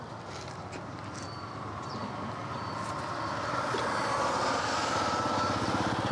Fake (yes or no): no